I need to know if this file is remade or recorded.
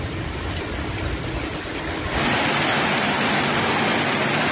recorded